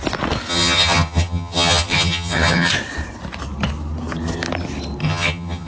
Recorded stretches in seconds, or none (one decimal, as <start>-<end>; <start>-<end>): 0.0-0.5; 2.7-5.0

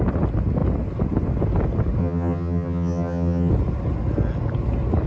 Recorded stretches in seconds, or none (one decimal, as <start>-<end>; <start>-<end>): 0.0-2.0; 3.5-5.1

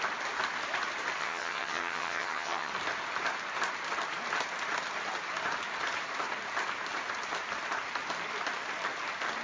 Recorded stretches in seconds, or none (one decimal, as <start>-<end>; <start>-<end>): 0.0-1.2; 2.7-9.4